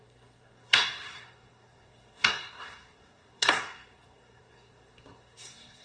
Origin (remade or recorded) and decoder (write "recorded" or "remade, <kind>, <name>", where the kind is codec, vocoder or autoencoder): remade, codec, SNAC